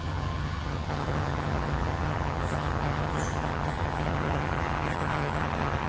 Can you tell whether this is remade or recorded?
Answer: remade